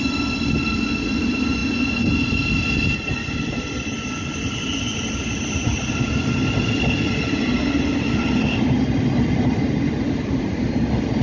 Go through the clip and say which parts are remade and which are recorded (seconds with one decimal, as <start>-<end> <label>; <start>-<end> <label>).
0.0-11.2 recorded